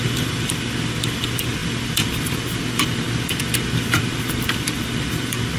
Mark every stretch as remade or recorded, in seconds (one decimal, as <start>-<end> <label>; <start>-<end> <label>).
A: 0.0-5.6 remade